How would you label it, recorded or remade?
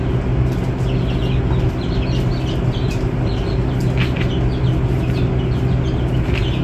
recorded